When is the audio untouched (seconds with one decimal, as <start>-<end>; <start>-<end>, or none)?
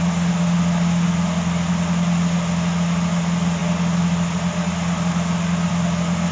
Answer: 0.0-6.3